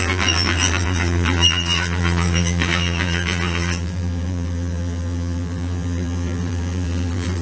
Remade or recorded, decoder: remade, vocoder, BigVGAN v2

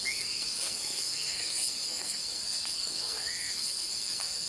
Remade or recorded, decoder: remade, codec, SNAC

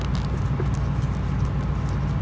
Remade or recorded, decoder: recorded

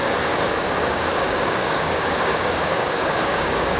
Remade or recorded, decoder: remade, codec, DAC